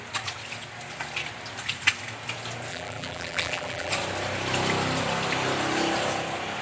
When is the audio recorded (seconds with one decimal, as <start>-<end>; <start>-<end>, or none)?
0.0-2.7; 3.9-6.6